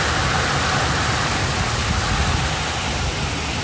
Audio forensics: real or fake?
real